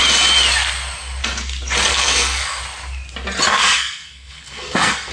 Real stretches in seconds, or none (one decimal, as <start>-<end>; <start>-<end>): 0.0-1.9; 2.6-3.5